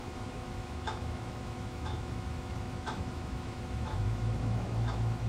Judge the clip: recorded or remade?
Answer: remade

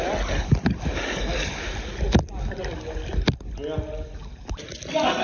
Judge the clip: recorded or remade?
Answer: recorded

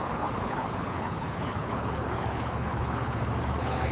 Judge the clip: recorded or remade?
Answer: remade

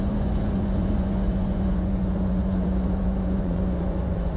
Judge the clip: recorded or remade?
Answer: remade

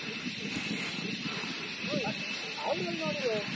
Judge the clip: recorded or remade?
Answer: recorded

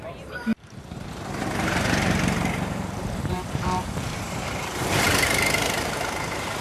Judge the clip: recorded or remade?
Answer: remade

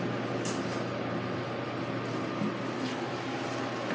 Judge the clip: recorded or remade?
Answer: recorded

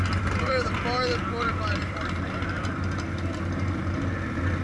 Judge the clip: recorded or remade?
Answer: recorded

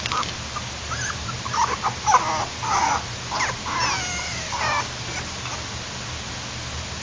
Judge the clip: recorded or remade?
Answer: recorded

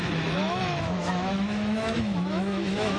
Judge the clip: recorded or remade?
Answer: remade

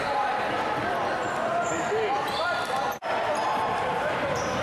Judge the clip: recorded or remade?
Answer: recorded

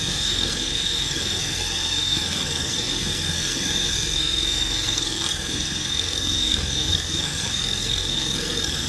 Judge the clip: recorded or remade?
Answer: remade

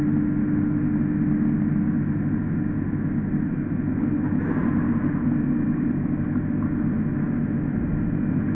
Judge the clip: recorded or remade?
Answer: recorded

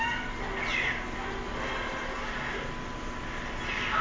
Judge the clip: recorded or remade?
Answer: recorded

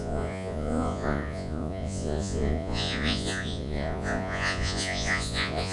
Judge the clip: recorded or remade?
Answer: remade